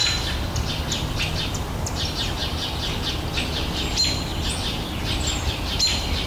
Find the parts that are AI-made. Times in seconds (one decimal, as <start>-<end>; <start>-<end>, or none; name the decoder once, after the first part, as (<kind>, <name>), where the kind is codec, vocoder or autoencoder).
0.0-2.4 (vocoder, BigVGAN v2); 3.5-4.3; 5.0-6.3